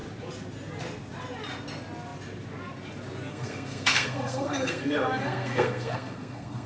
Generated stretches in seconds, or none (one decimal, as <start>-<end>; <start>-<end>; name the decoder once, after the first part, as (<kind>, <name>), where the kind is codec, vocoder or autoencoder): 3.3-6.7 (codec, SNAC)